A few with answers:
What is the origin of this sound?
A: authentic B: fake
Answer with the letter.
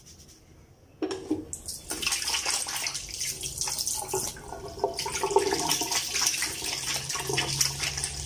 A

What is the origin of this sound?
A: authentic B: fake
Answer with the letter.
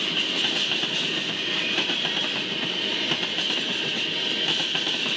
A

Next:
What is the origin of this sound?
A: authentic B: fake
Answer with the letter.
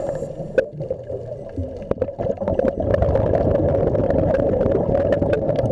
A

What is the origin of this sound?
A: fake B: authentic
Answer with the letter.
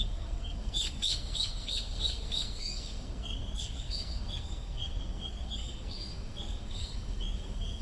A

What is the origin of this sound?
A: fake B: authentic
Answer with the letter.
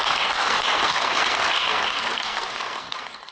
A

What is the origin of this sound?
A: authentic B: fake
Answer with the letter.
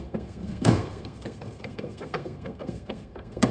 B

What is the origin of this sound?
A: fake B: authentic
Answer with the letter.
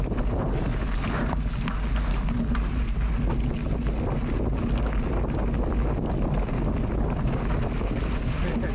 B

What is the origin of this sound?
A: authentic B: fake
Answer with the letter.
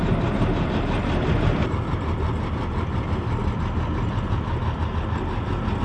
A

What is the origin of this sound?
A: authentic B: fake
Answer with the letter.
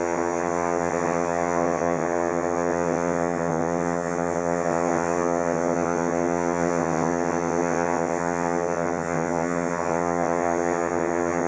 B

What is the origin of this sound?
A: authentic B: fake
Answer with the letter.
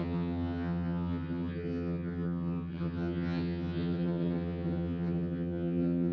B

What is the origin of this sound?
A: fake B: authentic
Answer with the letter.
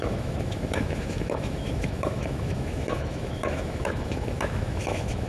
A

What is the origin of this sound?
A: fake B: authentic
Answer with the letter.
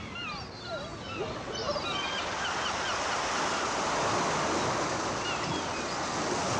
B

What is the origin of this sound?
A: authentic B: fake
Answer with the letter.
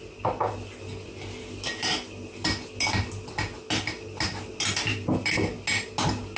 A